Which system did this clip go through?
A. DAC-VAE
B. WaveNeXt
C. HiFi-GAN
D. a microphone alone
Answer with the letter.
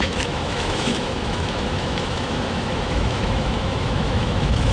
A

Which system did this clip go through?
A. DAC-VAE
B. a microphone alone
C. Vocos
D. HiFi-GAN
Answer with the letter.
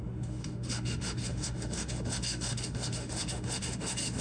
A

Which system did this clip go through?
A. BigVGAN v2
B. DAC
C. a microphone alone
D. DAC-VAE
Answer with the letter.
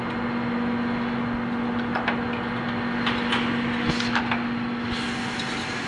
C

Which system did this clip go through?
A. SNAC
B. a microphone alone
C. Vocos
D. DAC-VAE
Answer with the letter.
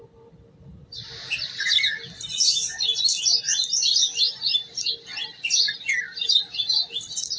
B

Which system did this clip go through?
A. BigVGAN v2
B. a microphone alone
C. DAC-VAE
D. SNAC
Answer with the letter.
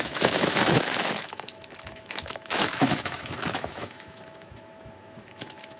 C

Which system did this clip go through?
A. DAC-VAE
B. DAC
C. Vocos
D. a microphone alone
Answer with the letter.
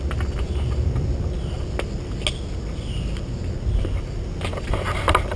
D